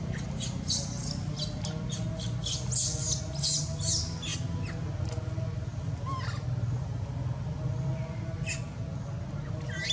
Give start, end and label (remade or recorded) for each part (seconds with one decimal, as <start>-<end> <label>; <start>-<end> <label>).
0.0-9.9 recorded